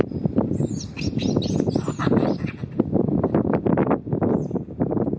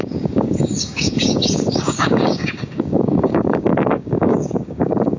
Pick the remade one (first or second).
second